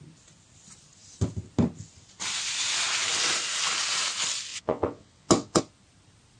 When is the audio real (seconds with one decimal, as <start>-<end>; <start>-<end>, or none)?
0.0-4.5; 5.6-6.4